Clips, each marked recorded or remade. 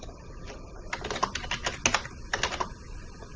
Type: recorded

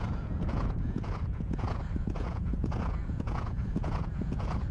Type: remade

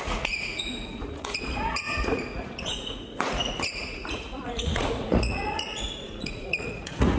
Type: remade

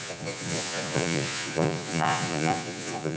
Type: remade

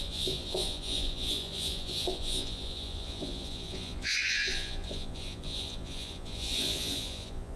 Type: remade